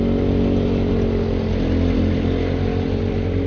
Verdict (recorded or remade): recorded